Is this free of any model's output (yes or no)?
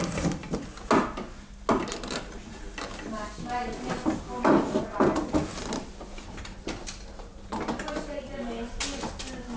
yes